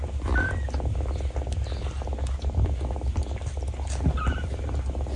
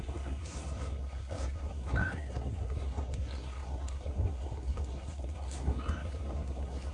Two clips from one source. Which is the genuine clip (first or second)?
first